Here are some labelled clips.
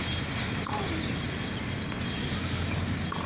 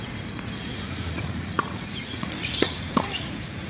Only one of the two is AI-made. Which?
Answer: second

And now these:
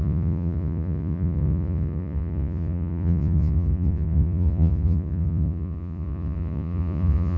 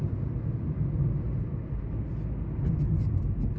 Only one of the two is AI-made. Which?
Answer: first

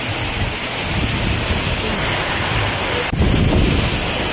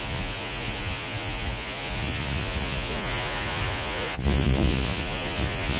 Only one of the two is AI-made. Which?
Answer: second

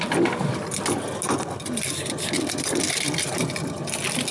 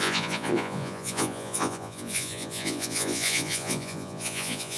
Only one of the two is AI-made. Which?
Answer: second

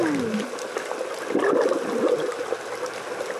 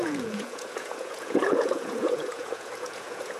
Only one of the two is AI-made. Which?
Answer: second